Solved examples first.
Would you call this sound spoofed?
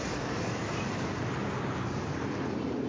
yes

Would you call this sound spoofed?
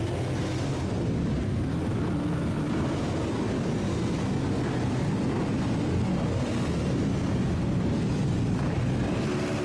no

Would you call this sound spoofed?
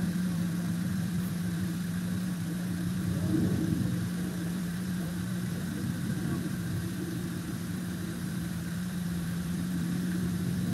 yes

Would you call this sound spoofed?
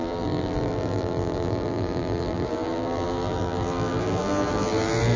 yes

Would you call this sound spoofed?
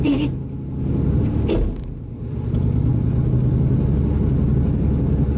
no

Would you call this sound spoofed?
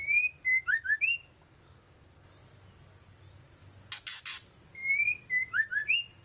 no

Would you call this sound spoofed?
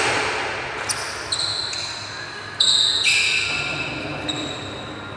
no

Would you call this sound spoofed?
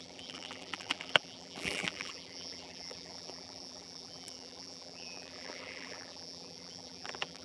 yes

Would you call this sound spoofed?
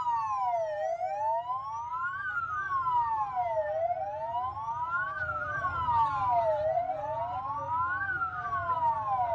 no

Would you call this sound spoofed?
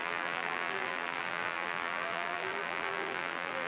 yes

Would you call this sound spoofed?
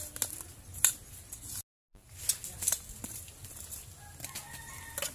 no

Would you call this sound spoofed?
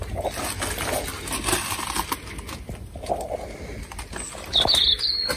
no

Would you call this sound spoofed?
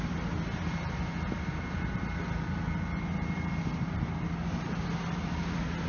no